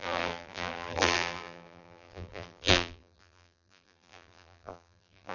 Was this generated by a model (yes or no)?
yes